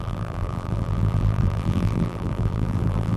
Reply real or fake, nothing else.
fake